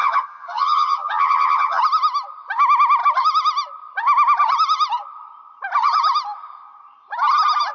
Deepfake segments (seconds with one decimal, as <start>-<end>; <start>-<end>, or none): 0.0-1.8